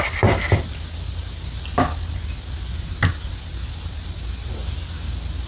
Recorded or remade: recorded